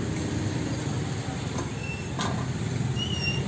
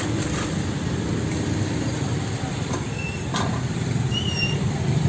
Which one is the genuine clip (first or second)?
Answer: first